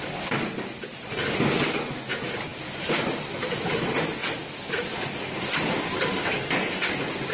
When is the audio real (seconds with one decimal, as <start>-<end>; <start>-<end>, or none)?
0.0-7.3